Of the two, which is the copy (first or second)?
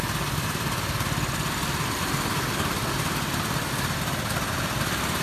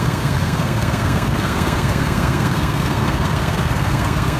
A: second